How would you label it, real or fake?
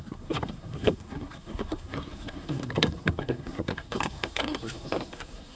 fake